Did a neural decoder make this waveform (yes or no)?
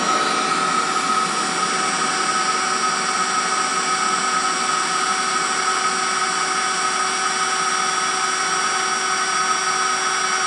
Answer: no